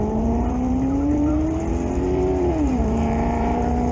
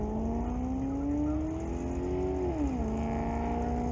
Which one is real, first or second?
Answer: second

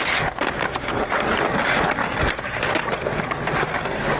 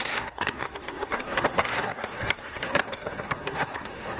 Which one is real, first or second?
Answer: first